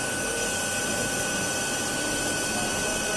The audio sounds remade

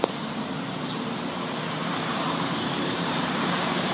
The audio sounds remade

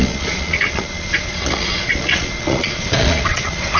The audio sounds remade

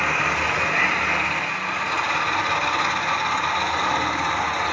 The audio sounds remade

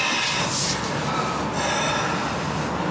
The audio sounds recorded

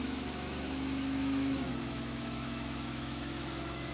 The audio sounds remade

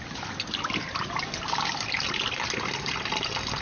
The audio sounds recorded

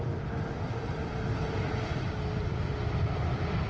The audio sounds recorded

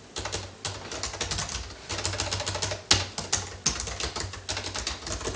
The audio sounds recorded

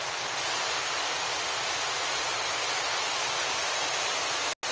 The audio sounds recorded